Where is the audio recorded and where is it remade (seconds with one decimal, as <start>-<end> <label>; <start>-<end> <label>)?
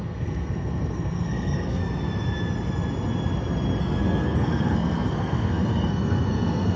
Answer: 0.0-1.8 remade; 1.8-3.8 recorded; 3.8-6.8 remade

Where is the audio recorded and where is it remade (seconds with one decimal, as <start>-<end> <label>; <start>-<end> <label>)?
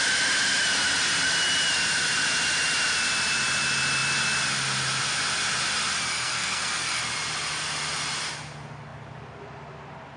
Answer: 0.0-6.1 recorded; 6.1-7.0 remade; 7.0-10.2 recorded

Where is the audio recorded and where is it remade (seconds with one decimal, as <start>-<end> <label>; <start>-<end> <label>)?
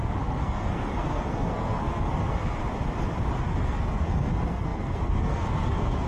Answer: 0.0-2.6 remade; 2.6-3.4 recorded; 3.4-6.1 remade